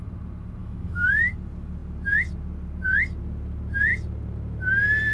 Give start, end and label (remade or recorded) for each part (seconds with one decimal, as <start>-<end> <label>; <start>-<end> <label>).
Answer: 0.0-0.6 recorded; 0.6-1.1 remade; 1.1-5.1 recorded